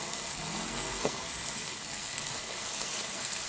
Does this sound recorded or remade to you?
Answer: remade